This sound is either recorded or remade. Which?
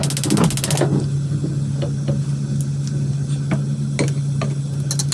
recorded